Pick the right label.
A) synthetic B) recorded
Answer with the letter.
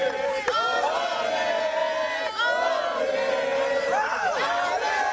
B